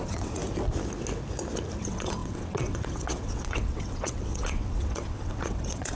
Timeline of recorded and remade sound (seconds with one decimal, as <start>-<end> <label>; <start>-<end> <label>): 0.0-0.4 remade; 0.4-1.8 recorded; 1.8-5.9 remade